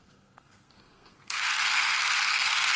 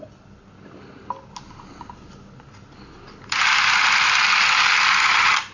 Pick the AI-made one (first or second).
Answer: first